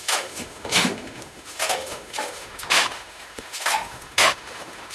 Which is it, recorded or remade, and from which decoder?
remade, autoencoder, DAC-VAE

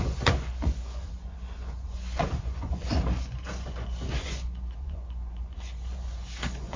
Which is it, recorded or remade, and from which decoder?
remade, vocoder, Vocos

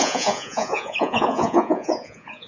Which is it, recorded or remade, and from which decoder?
remade, vocoder, Vocos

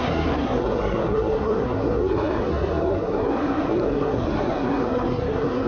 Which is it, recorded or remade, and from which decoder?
remade, codec, SNAC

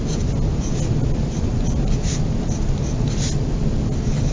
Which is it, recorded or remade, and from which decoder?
recorded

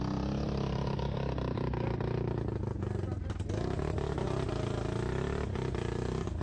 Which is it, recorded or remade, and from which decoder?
recorded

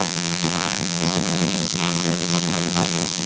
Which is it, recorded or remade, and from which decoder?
remade, vocoder, BigVGAN v2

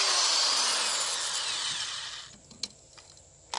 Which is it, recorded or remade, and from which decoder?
recorded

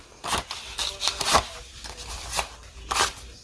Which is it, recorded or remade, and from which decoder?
recorded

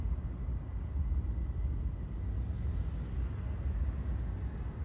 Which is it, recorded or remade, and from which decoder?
recorded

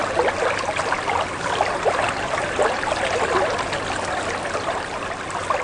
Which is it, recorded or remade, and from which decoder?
recorded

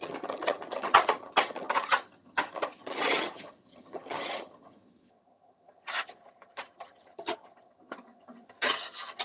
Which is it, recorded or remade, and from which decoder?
remade, vocoder, HiFi-GAN